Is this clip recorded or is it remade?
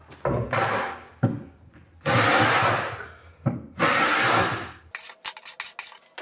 recorded